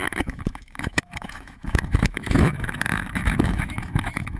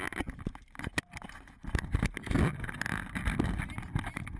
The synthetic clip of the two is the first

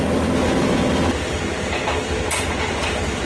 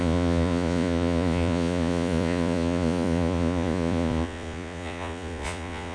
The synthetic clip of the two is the second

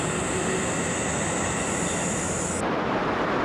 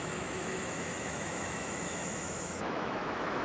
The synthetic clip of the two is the second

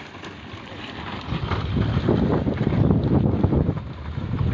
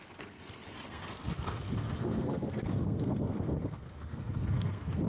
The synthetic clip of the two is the second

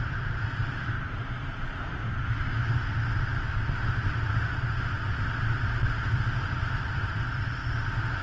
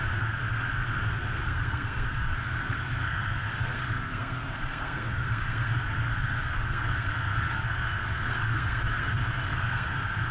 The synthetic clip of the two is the second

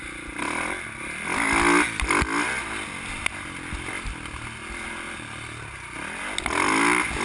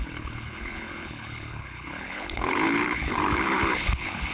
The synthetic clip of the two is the second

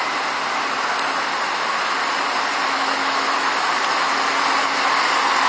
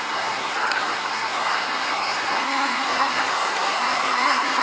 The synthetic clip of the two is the second